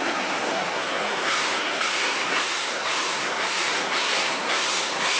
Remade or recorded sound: remade